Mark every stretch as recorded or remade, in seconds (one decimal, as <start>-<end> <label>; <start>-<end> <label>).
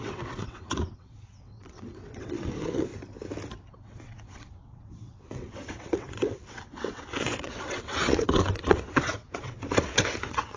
0.0-2.9 remade; 2.9-3.7 recorded; 3.7-10.6 remade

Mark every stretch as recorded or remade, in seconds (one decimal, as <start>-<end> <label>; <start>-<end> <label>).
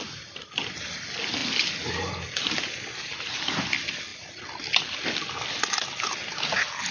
0.0-6.9 recorded